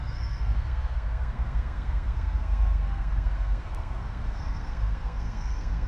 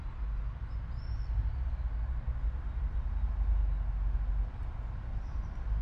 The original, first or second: second